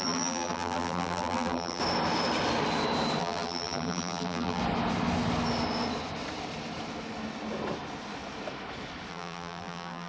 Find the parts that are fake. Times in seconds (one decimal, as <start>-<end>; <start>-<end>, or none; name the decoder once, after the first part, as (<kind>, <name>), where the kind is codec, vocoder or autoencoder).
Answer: 0.0-1.8 (vocoder, BigVGAN v2); 3.2-4.6; 9.1-10.1

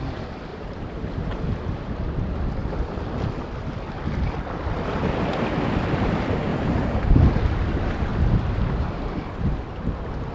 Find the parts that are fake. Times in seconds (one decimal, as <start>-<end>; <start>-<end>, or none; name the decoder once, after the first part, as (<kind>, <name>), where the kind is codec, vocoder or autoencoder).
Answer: 0.5-1.4 (vocoder, BigVGAN v2); 6.5-7.1

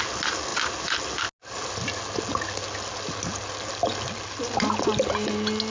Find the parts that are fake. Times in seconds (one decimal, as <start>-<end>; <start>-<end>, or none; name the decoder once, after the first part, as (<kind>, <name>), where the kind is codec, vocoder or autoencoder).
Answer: none

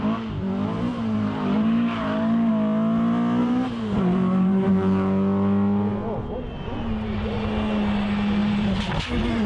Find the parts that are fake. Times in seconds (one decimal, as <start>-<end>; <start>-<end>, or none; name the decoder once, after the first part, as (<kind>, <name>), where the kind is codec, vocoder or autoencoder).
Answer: 0.9-2.5 (vocoder, BigVGAN v2); 3.4-4.7; 8.4-8.9